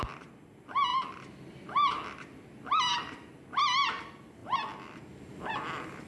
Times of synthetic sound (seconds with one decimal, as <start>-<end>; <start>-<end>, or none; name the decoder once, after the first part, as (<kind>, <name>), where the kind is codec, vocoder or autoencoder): none